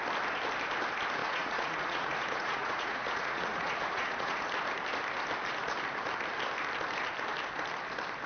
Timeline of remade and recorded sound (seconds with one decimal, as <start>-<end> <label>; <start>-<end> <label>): 0.0-1.2 recorded; 1.2-4.4 remade; 4.4-8.3 recorded